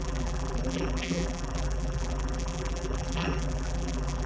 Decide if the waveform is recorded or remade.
remade